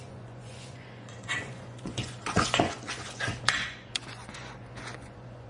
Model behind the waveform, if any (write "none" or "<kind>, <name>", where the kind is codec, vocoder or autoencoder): vocoder, Vocos